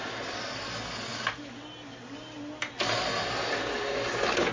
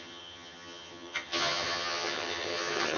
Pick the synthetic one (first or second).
second